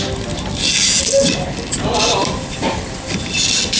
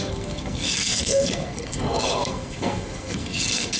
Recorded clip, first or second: first